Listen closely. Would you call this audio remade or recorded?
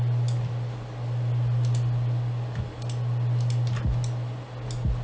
recorded